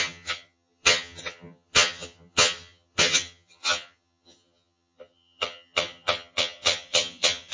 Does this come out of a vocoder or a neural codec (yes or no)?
yes